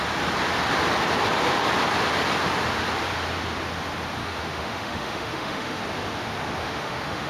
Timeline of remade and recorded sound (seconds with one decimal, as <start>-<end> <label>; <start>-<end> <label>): 0.0-4.2 recorded; 4.2-5.8 remade; 5.8-6.6 recorded; 6.6-7.3 remade